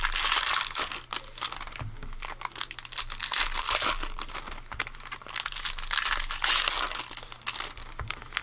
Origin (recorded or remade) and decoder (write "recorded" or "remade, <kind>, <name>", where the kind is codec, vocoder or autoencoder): recorded